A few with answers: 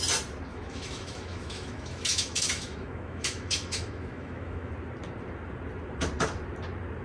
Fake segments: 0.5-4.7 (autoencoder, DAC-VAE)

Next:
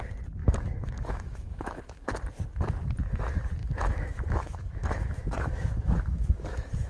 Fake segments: 0.4-2.1 (autoencoder, DAC-VAE); 3.6-6.9

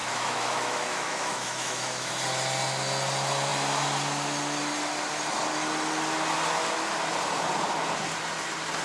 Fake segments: 0.0-2.1 (autoencoder, DAC-VAE)

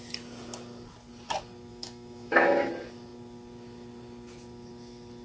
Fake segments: 1.7-2.7 (autoencoder, DAC-VAE)

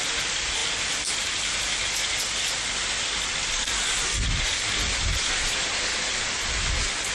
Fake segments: none

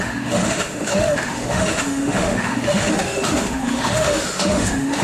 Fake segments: 0.0-5.0 (autoencoder, DAC-VAE)

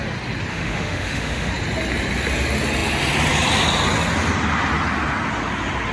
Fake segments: 0.5-1.5 (autoencoder, DAC-VAE)